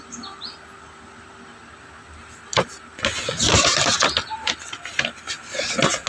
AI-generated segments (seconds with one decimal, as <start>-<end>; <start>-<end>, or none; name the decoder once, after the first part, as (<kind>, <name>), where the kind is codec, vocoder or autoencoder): none